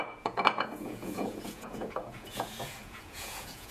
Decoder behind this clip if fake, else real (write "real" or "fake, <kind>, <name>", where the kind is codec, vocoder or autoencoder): fake, vocoder, Vocos